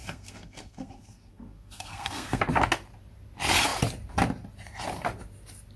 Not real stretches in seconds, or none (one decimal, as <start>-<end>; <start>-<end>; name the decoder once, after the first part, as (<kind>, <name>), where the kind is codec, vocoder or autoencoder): 0.0-2.4 (codec, SNAC)

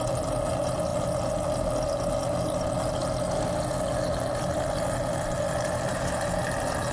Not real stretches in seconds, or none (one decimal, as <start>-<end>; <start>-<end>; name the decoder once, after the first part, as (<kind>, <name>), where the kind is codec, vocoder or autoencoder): none

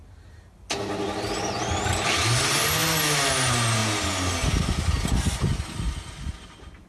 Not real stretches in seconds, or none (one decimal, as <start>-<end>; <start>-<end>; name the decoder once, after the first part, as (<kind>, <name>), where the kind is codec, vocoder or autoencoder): none

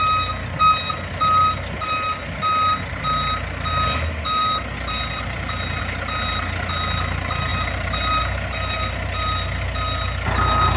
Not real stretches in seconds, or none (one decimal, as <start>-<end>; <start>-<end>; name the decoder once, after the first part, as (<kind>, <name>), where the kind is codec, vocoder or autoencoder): none

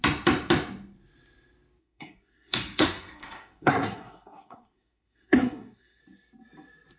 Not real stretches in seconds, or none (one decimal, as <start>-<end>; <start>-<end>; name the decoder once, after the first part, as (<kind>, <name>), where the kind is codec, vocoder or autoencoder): 1.8-6.0 (codec, SNAC)

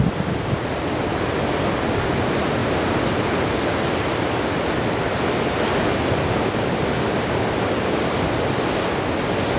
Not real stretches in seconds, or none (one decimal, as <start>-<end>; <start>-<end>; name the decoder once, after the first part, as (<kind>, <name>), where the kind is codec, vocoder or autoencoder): none

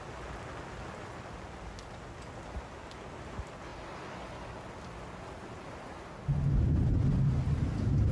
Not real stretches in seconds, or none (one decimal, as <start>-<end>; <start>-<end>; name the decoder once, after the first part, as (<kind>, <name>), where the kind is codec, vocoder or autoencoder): none